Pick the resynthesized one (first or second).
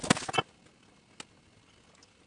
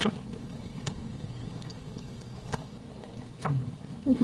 second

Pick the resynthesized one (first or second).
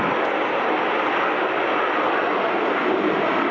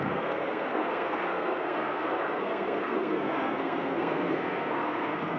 second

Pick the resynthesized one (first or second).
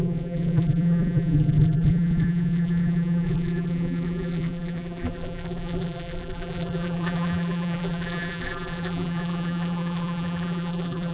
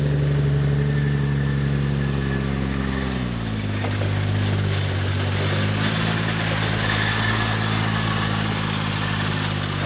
first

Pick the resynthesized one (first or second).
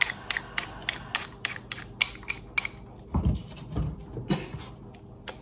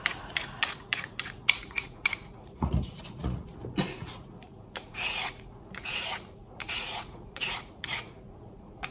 second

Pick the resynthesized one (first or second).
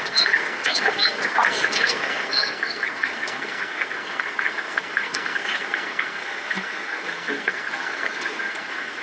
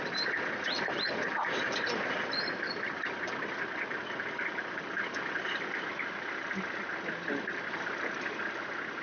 first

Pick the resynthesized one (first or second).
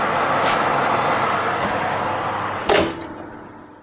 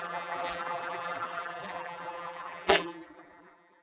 second